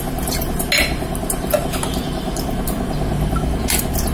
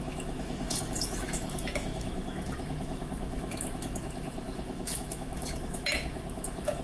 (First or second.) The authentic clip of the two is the first